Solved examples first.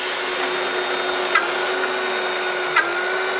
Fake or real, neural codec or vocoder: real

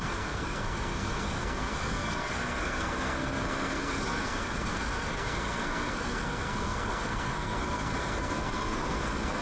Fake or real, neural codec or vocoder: fake, codec, SNAC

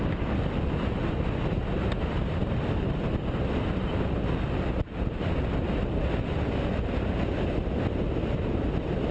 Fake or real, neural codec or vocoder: real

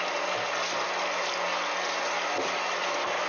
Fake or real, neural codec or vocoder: real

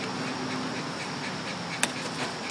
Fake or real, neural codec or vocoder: real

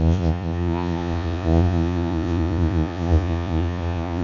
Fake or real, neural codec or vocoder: fake, vocoder, Vocos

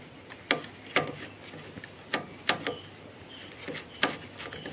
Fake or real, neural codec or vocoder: real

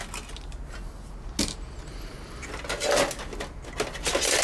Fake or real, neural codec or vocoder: real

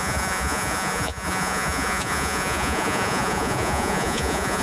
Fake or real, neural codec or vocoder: fake, vocoder, Vocos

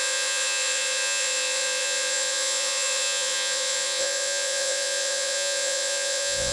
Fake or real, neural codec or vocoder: fake, vocoder, Vocos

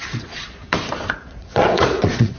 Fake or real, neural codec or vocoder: fake, vocoder, Vocos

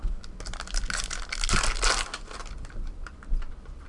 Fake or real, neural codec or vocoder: real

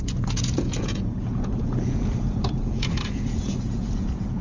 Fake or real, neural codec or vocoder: fake, vocoder, Vocos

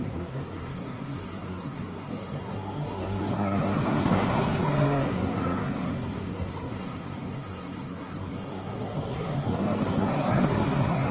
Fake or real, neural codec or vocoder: fake, codec, SNAC